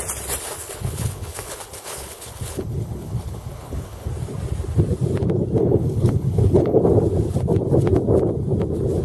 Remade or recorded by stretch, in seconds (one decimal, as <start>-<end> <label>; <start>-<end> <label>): 0.0-0.6 recorded; 0.6-4.1 remade; 4.1-5.6 recorded; 5.6-6.8 remade; 6.8-9.0 recorded